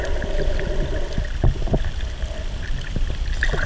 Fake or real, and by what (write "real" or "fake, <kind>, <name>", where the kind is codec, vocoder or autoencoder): real